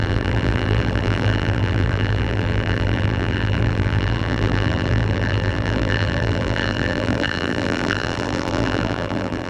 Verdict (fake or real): fake